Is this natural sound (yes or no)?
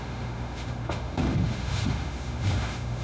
no